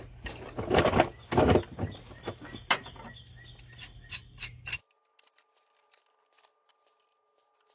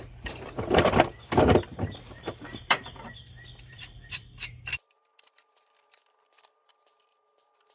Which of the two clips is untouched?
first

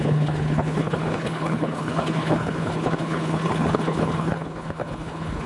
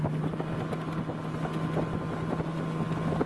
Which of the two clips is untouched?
second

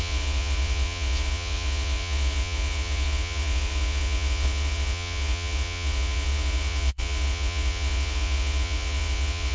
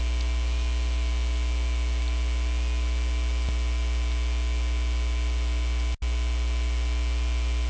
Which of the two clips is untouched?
second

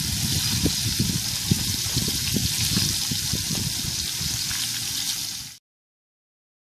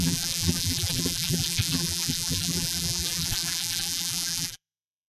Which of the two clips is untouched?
first